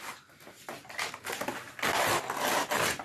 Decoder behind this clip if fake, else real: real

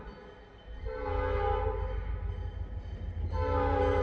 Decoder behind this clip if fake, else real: real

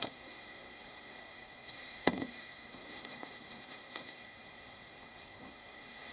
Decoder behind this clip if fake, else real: fake, codec, SNAC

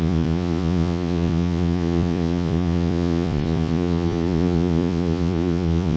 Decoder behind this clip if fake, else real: fake, vocoder, Vocos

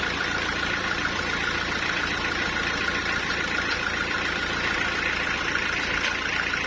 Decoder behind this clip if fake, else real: fake, vocoder, BigVGAN v2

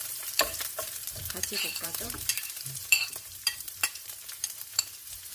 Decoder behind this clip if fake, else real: fake, vocoder, BigVGAN v2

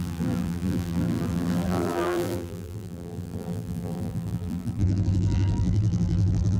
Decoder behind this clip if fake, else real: fake, vocoder, BigVGAN v2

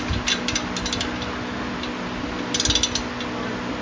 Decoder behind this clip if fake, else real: real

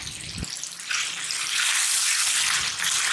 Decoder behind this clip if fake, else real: real